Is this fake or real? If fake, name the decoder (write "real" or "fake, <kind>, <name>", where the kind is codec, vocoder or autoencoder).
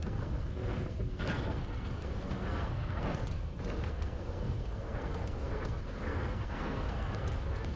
fake, codec, SNAC